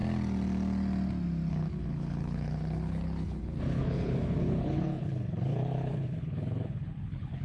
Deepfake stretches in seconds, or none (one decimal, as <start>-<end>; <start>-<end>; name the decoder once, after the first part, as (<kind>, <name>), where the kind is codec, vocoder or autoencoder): 1.5-7.4 (codec, HILCodec)